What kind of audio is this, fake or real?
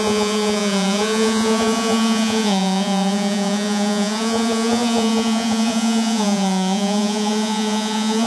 fake